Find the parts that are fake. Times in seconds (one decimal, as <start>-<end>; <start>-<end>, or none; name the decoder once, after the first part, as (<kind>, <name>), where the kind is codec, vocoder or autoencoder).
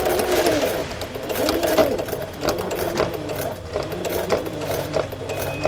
0.8-1.3 (vocoder, BigVGAN v2); 1.8-5.1